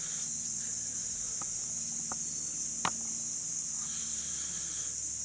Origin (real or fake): real